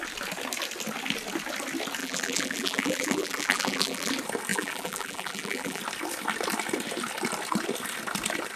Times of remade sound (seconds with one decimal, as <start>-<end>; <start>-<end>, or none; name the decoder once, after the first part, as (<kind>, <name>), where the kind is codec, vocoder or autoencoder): 2.0-4.1 (vocoder, BigVGAN v2); 4.5-5.8

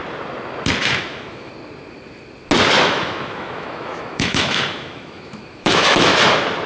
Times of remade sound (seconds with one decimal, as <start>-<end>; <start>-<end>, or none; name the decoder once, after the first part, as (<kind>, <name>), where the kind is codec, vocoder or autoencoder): 0.8-1.5 (autoencoder, DAC-VAE); 2.8-6.1

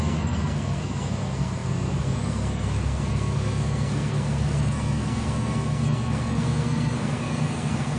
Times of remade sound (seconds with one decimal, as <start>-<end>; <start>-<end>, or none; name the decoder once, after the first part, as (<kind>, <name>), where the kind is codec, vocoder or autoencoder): 0.0-8.0 (codec, SNAC)